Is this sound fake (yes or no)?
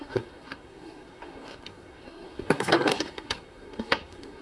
yes